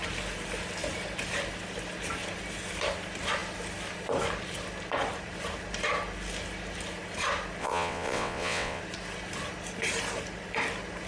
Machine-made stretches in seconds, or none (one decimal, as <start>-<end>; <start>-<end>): 7.6-8.8